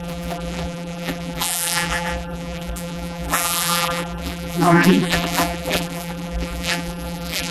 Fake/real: fake